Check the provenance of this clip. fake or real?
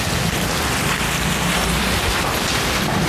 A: real